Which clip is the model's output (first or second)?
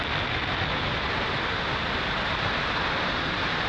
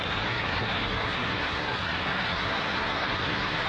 second